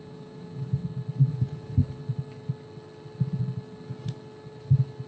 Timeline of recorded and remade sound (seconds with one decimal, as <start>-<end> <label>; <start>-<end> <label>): 0.0-0.8 remade; 0.8-1.3 recorded; 1.3-1.8 remade; 1.8-5.1 recorded